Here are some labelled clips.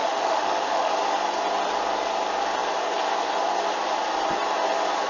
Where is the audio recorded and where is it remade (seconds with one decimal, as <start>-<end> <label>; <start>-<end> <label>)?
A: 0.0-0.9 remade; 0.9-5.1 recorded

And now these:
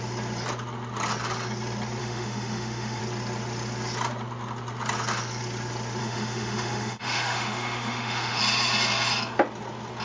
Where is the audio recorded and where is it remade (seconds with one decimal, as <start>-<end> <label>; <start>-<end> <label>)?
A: 0.0-2.0 recorded; 2.0-3.0 remade; 3.0-6.0 recorded; 6.0-8.4 remade; 8.4-10.0 recorded

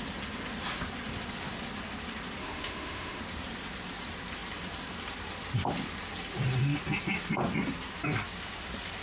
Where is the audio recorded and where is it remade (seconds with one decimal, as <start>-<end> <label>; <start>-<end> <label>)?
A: 0.0-2.4 recorded; 2.4-3.2 remade; 3.2-9.0 recorded

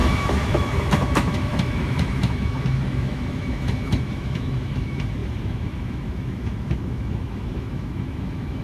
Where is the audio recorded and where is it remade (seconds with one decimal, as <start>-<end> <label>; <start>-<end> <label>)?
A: 0.0-8.6 remade